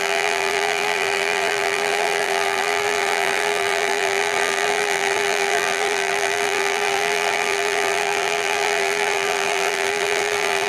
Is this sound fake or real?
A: fake